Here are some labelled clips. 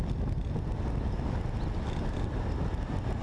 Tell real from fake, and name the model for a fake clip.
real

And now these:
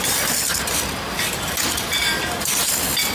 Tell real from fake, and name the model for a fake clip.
real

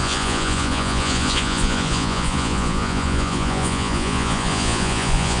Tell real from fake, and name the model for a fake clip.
fake, vocoder, Vocos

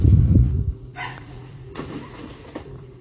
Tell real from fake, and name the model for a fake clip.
fake, vocoder, Vocos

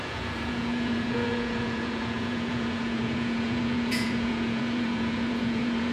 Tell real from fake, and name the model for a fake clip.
fake, vocoder, Vocos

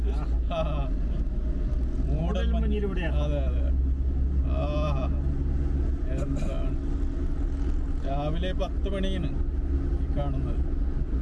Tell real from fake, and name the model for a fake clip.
real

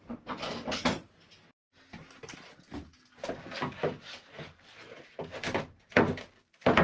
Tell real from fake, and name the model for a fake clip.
real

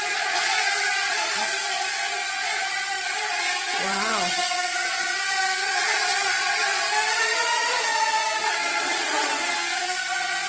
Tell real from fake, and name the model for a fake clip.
fake, vocoder, Vocos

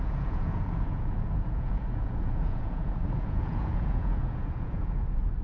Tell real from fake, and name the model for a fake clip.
fake, vocoder, Vocos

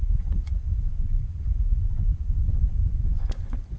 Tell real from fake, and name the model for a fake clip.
fake, vocoder, Vocos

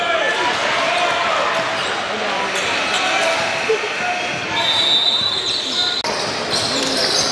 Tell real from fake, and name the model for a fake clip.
real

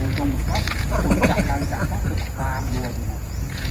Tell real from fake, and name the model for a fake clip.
fake, vocoder, Vocos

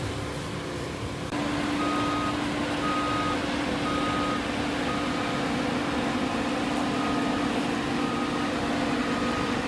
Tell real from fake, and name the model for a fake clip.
real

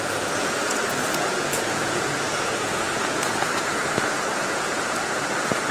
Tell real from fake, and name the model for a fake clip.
fake, vocoder, Vocos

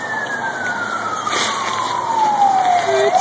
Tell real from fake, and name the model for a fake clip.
real